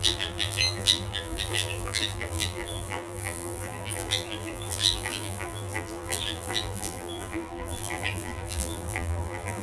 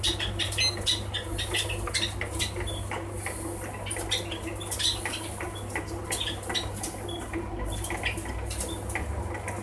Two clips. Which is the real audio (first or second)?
second